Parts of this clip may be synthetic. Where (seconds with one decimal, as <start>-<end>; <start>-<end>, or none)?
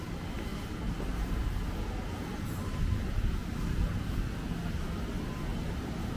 0.5-1.4; 3.4-4.2; 5.5-6.2